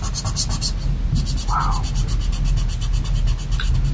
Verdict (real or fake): real